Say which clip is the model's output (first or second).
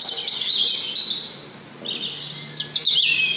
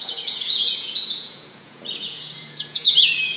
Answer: second